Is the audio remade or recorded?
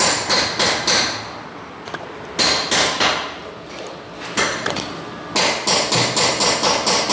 recorded